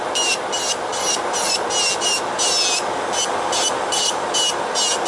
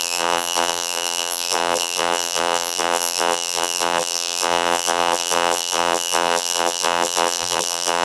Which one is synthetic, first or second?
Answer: second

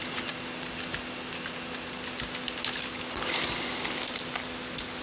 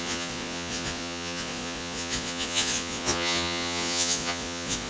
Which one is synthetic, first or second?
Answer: second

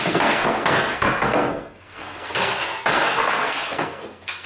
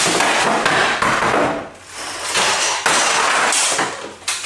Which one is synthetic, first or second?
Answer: first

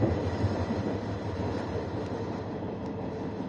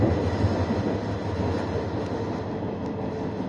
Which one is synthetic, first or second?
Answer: first